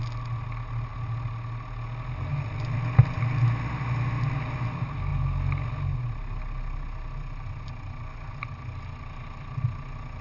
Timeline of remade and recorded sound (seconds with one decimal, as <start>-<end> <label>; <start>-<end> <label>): 0.0-10.2 recorded